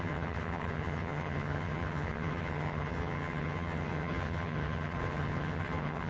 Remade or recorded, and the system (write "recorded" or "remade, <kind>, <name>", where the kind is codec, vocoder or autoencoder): remade, vocoder, HiFi-GAN